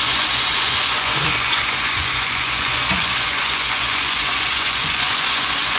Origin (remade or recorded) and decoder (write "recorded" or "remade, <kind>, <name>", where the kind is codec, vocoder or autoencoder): remade, vocoder, Vocos